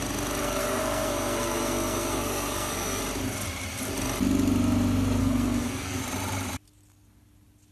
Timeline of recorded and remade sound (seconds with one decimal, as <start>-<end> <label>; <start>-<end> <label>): 0.0-0.4 recorded; 0.4-3.0 remade; 3.0-5.2 recorded; 5.2-6.0 remade; 6.0-7.7 recorded